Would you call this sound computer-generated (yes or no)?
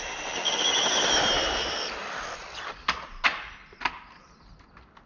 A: no